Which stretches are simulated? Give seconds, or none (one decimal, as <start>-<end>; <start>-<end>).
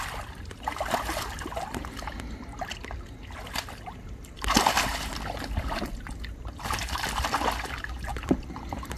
none